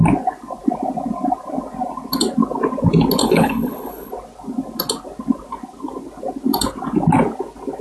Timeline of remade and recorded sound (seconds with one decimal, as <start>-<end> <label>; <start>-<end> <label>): 0.0-3.2 recorded; 3.2-4.1 remade; 4.1-7.8 recorded